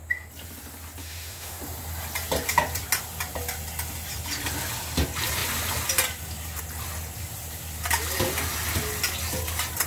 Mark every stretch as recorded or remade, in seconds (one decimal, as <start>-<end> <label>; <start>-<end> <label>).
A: 0.0-1.0 recorded; 1.0-1.6 remade; 1.6-9.9 recorded